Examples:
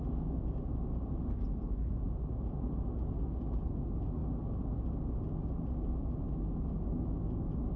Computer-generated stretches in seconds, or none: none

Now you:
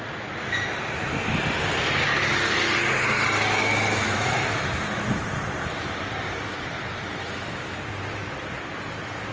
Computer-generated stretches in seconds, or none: 3.6-5.2; 7.2-7.8